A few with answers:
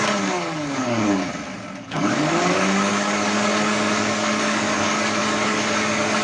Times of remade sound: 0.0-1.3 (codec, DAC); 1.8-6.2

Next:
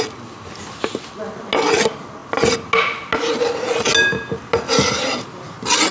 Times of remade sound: none

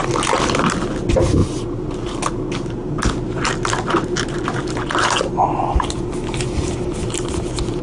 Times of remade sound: none

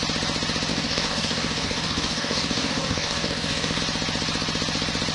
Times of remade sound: 0.7-3.8 (codec, DAC)

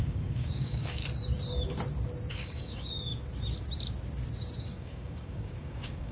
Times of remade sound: 0.0-1.0 (codec, DAC); 2.3-3.1; 4.6-6.1

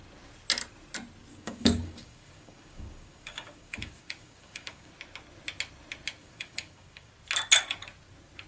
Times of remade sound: 1.3-4.9 (codec, DAC); 6.2-7.1